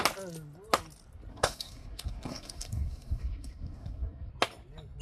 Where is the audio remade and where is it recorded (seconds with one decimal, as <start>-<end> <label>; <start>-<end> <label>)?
0.0-1.3 recorded; 1.3-4.3 remade; 4.3-5.0 recorded